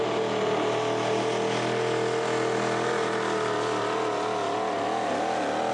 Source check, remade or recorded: recorded